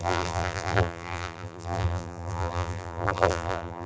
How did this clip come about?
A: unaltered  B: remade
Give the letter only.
B